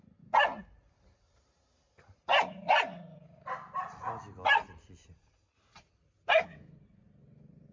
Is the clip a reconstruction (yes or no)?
no